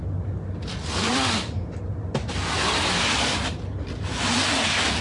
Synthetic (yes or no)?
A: no